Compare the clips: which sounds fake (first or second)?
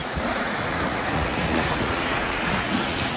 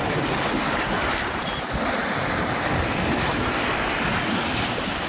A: first